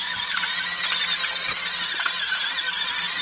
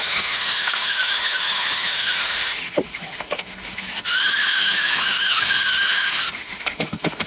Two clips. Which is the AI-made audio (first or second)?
second